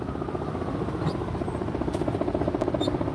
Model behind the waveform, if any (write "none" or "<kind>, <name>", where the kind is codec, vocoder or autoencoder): none